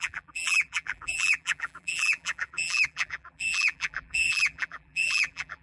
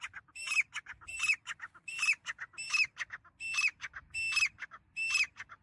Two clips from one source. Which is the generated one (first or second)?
first